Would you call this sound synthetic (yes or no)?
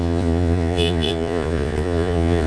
yes